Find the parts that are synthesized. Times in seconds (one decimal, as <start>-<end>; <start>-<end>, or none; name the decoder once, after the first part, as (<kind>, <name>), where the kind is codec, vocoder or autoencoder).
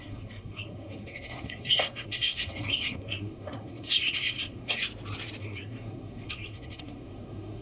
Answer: 0.0-4.8 (codec, SNAC); 5.4-7.6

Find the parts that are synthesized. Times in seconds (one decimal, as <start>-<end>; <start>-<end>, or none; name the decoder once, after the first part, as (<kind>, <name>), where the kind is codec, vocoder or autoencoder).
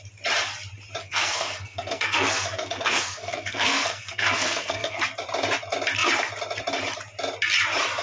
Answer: 1.0-5.0 (codec, SNAC)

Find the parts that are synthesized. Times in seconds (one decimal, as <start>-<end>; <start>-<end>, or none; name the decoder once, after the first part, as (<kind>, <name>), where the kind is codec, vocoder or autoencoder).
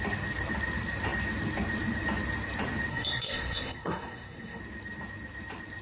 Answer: 2.9-4.6 (codec, SNAC)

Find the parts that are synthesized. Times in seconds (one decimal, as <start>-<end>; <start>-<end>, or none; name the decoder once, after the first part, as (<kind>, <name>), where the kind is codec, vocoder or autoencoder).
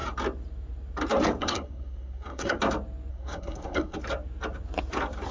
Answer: 1.4-2.6 (codec, SNAC); 3.1-4.0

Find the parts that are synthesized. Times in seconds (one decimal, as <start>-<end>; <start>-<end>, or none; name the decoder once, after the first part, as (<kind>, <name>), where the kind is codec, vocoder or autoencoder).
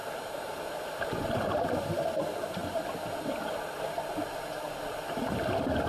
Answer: none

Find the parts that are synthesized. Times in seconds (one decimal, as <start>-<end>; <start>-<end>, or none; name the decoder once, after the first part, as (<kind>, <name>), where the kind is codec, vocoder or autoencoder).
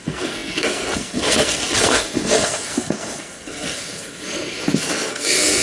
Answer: 0.0-5.6 (codec, SNAC)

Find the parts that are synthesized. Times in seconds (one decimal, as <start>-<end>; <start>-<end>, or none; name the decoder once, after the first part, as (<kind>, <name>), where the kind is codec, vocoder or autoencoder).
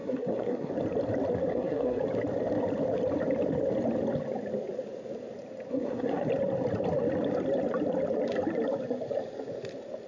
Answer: 0.0-0.7 (codec, SNAC); 1.5-2.0; 5.7-6.3